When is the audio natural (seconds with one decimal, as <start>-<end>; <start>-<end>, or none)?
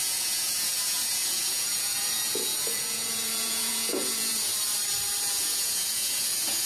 4.5-5.2